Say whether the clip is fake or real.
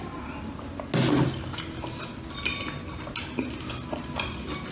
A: real